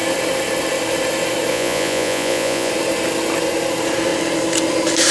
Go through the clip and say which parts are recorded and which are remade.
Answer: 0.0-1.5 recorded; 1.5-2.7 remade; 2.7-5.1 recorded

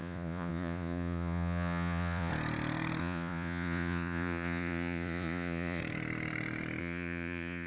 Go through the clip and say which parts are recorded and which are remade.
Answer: 0.0-2.3 remade; 2.3-3.0 recorded; 3.0-5.8 remade; 5.8-6.8 recorded; 6.8-7.7 remade

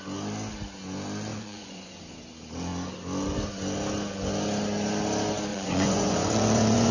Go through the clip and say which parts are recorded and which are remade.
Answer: 0.0-1.3 recorded; 1.3-2.0 remade; 2.0-5.5 recorded; 5.5-6.9 remade

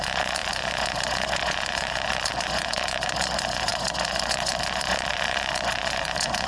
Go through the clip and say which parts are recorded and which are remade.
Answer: 0.0-6.5 remade

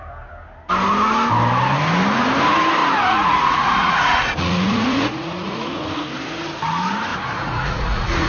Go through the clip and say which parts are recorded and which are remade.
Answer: 0.0-2.8 recorded; 2.8-5.8 remade; 5.8-7.1 recorded; 7.1-8.3 remade

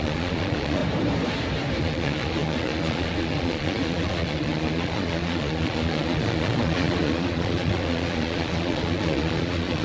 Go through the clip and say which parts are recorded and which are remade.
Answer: 0.0-0.8 remade; 0.8-1.8 recorded; 1.8-9.8 remade

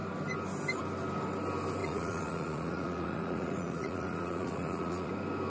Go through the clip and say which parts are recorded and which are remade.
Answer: 0.0-1.8 recorded; 1.8-5.1 remade; 5.1-5.5 recorded